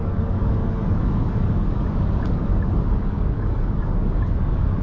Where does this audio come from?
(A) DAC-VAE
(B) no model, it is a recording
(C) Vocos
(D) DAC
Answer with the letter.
D